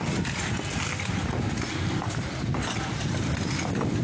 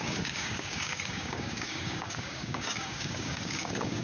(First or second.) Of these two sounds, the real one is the first